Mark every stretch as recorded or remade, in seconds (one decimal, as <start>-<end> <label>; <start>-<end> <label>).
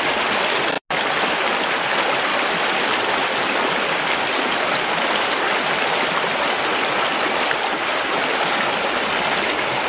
0.0-9.9 recorded